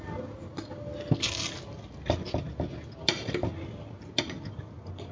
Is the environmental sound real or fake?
real